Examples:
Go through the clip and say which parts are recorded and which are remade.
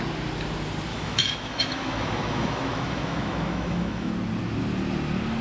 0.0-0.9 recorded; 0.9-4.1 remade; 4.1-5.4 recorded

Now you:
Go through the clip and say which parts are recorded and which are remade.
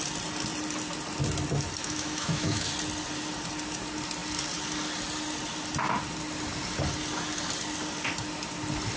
0.0-1.8 recorded; 1.8-2.7 remade; 2.7-9.0 recorded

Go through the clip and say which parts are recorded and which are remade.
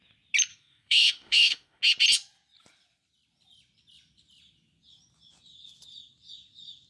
0.0-0.5 recorded; 0.5-1.8 remade; 1.8-6.9 recorded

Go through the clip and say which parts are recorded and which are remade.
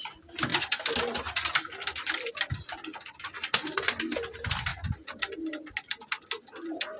0.0-7.0 recorded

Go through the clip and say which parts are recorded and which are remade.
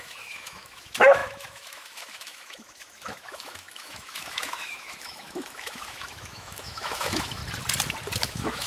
0.0-7.4 remade; 7.4-8.2 recorded; 8.2-8.7 remade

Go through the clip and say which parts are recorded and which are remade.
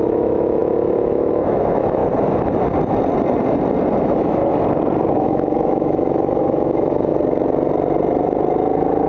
0.0-2.0 remade; 2.0-4.0 recorded; 4.0-4.4 remade; 4.4-5.1 recorded; 5.1-7.1 remade; 7.1-9.1 recorded